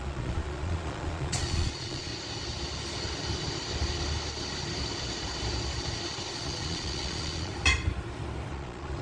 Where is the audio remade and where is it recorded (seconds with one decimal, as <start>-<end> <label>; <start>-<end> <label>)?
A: 0.0-2.1 remade; 2.1-6.3 recorded; 6.3-7.5 remade; 7.5-8.5 recorded; 8.5-9.0 remade